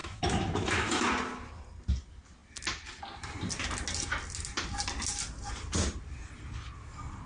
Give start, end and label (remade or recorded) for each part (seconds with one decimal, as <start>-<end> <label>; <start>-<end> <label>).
0.0-1.1 remade; 1.1-7.3 recorded